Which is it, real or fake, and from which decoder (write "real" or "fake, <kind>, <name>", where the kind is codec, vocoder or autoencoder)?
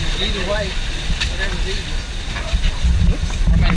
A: real